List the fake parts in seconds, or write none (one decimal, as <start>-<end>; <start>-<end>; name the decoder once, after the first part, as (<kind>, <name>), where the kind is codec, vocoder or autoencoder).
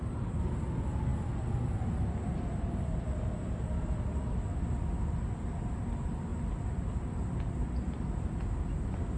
none